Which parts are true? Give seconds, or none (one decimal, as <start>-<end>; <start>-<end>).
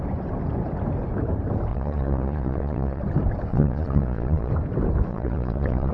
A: 0.0-1.7; 3.0-3.5; 4.5-5.1